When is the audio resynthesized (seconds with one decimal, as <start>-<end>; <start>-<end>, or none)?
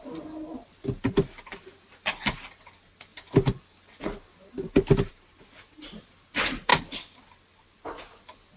none